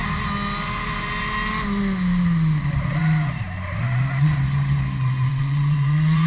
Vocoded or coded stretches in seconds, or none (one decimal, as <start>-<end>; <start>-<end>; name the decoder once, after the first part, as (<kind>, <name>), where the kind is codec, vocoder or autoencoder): 5.3-6.3 (vocoder, WaveNeXt)